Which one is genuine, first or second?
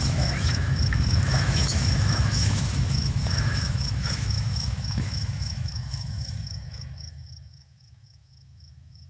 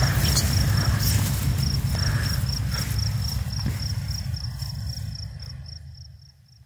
second